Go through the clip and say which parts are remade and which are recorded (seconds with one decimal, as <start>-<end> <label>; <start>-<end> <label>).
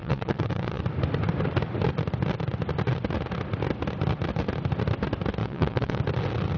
0.0-0.8 remade; 0.8-5.4 recorded; 5.4-6.0 remade; 6.0-6.6 recorded